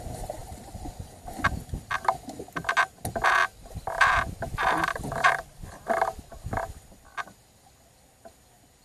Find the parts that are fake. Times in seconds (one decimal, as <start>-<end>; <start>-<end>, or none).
3.4-6.3